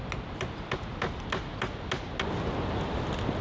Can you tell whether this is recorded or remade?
recorded